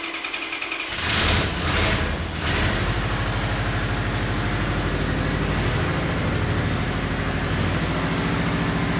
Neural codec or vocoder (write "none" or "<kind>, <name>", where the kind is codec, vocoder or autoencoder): none